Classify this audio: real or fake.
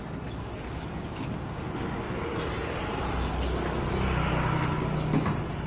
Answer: real